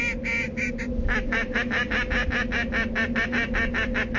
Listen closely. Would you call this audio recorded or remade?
recorded